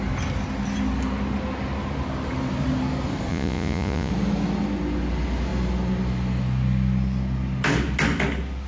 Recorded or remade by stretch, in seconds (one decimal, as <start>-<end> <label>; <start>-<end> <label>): 0.0-3.3 recorded; 3.3-4.1 remade; 4.1-8.7 recorded

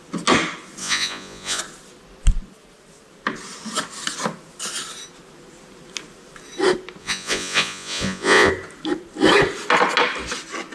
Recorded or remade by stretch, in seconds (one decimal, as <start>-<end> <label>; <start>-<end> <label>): 0.0-0.8 recorded; 0.8-1.6 remade; 1.6-7.0 recorded; 7.0-8.5 remade; 8.5-10.7 recorded

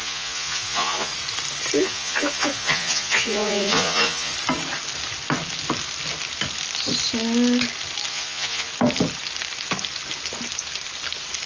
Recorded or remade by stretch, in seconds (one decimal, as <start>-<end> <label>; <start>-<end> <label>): 0.0-1.1 remade; 1.1-1.8 recorded; 1.8-4.3 remade; 4.3-8.1 recorded; 8.1-8.7 remade; 8.7-11.5 recorded

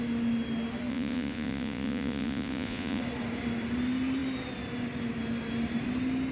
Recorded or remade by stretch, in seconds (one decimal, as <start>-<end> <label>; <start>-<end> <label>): 0.0-0.9 recorded; 0.9-3.0 remade; 3.0-6.3 recorded

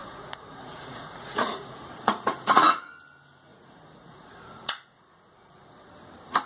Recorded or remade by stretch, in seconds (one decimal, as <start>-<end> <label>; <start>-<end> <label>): 0.0-2.8 remade; 2.8-3.5 recorded; 3.5-5.9 remade; 5.9-6.5 recorded